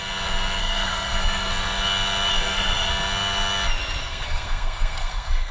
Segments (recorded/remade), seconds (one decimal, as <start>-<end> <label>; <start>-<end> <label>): 0.0-0.6 recorded; 0.6-1.5 remade; 1.5-2.3 recorded; 2.3-2.9 remade; 2.9-4.0 recorded; 4.0-5.5 remade